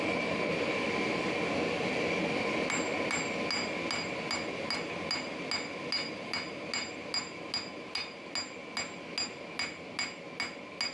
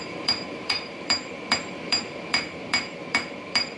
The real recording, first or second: first